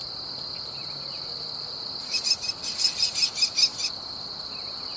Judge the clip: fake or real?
real